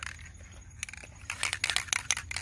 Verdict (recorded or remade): recorded